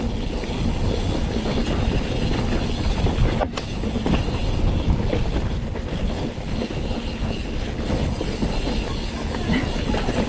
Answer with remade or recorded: recorded